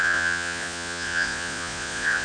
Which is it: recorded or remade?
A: remade